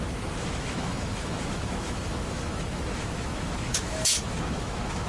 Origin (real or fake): fake